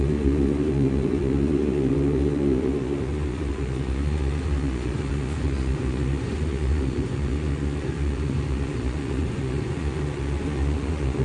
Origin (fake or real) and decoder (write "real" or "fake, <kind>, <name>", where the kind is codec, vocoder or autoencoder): fake, vocoder, Vocos